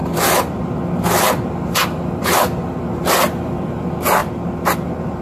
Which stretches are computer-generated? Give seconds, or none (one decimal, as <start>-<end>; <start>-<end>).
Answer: none